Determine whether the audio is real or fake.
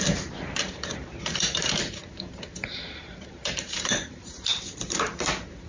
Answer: fake